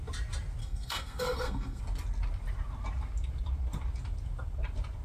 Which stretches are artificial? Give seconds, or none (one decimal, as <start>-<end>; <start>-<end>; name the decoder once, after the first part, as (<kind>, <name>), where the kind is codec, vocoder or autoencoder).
0.6-1.8 (codec, SNAC)